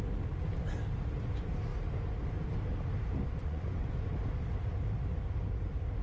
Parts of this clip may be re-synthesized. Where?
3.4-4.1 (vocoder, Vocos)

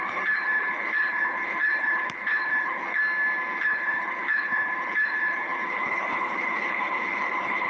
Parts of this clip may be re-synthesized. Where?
0.0-3.0 (codec, HILCodec); 3.6-7.7

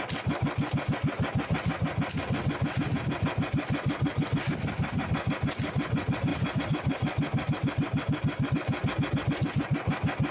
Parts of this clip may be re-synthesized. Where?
6.3-8.5 (vocoder, BigVGAN v2)

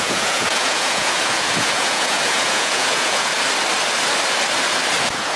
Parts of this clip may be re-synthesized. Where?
0.0-3.3 (vocoder, Vocos); 5.0-5.4

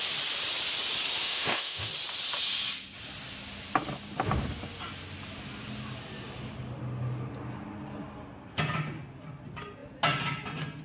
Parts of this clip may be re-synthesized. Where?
1.2-1.9 (autoencoder, DAC-VAE)

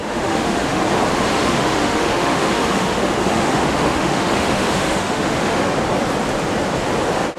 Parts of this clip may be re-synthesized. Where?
0.0-0.8 (autoencoder, DAC-VAE); 1.3-5.7

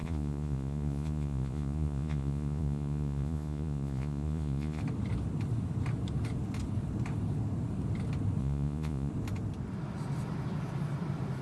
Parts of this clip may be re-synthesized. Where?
0.0-4.8 (vocoder, Vocos); 8.4-9.1